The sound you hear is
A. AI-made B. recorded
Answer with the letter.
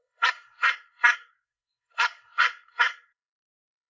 A